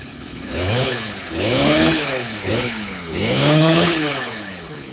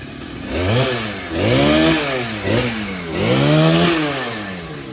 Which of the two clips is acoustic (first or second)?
second